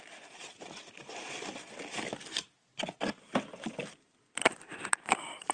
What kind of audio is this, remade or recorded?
recorded